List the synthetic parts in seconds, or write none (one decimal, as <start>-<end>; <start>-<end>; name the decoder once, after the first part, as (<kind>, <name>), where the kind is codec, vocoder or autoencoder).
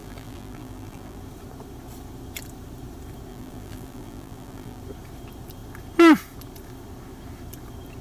0.0-1.2 (vocoder, BigVGAN v2); 3.3-4.8